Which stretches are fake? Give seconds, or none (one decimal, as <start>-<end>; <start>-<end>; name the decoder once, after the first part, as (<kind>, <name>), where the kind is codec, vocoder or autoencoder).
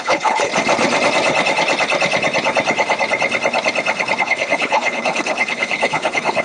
0.0-0.5 (codec, HILCodec); 4.2-6.4